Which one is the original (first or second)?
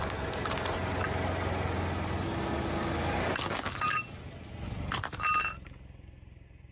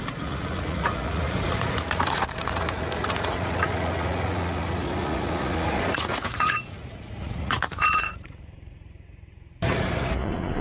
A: first